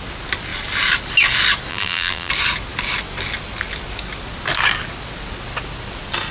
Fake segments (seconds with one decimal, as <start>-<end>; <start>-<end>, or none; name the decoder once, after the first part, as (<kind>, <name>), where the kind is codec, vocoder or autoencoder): 1.7-2.3 (vocoder, BigVGAN v2)